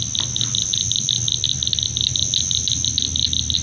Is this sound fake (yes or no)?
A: no